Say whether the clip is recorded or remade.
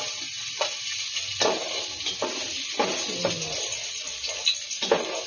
recorded